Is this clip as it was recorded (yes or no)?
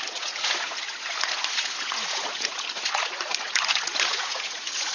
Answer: no